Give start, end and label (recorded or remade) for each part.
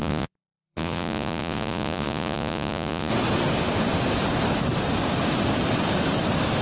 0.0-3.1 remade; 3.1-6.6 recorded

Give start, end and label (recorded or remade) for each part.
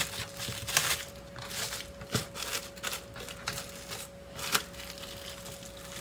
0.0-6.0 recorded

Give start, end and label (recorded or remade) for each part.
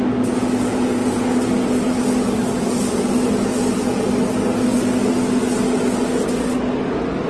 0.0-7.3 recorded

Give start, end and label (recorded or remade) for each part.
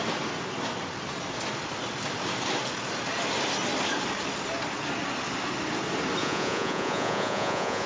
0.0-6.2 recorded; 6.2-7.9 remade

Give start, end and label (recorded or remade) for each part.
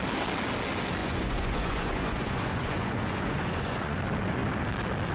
0.0-1.0 recorded; 1.0-4.0 remade; 4.0-5.1 recorded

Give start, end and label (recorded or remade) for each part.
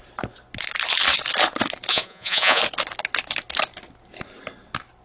0.0-1.9 recorded; 1.9-2.6 remade; 2.6-5.0 recorded